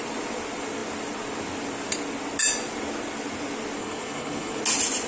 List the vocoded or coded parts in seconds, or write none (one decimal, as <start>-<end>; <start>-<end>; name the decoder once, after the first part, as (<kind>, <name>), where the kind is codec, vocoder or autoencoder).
3.8-4.6 (codec, HILCodec)